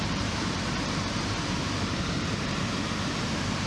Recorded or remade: remade